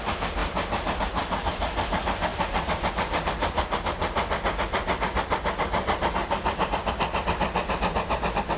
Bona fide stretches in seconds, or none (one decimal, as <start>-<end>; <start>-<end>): 0.0-2.3; 2.9-6.2; 6.9-8.6